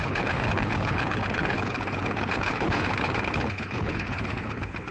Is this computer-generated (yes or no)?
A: yes